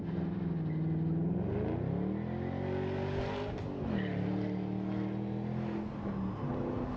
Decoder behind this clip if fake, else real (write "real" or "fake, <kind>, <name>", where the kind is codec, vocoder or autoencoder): real